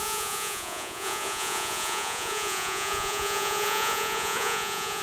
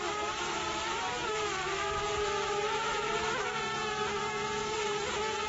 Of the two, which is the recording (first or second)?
second